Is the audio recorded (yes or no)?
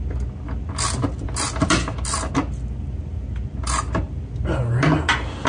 yes